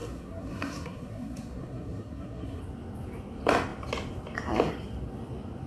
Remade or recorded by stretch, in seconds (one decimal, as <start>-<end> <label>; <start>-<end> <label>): 0.0-2.6 remade; 2.6-5.7 recorded